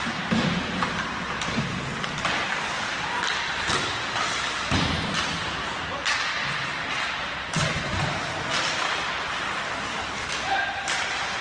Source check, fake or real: real